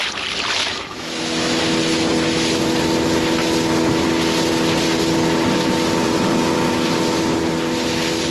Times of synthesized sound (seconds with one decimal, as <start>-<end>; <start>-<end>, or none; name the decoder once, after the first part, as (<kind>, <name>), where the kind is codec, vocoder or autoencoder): 0.6-1.6 (autoencoder, DAC-VAE)